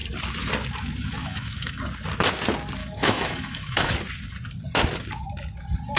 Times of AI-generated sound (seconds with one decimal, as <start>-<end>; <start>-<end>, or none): 1.2-1.8; 2.8-3.9